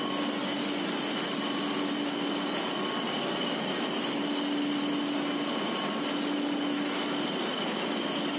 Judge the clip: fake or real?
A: real